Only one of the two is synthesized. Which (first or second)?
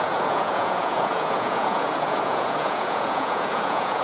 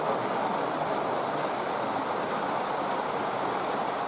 first